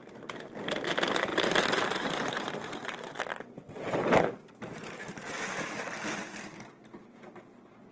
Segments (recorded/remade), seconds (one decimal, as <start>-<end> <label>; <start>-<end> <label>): 0.0-1.3 recorded; 1.3-5.3 remade; 5.3-7.9 recorded